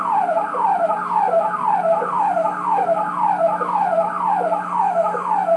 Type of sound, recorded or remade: recorded